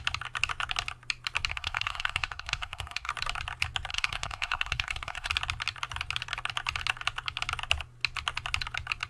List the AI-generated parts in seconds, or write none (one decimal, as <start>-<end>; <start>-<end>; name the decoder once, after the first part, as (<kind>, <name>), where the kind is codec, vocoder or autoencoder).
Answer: 1.5-3.1 (codec, SNAC); 3.9-5.3